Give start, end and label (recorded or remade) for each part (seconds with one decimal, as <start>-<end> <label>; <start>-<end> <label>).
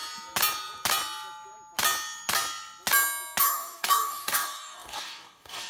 0.0-3.4 recorded; 3.4-5.7 remade